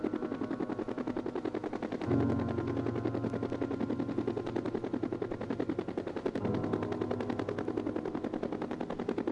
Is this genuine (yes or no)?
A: yes